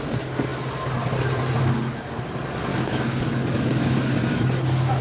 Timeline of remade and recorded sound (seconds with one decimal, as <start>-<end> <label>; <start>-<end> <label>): 0.0-2.7 recorded; 2.7-4.2 remade; 4.2-5.0 recorded